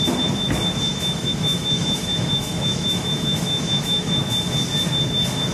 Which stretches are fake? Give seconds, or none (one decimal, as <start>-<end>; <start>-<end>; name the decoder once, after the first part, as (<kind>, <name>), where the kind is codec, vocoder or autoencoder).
0.9-4.2 (autoencoder, DAC-VAE)